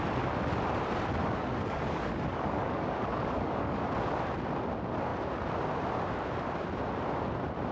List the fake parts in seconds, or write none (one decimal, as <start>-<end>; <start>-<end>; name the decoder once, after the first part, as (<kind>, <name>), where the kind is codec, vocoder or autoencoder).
1.2-3.8 (codec, DAC)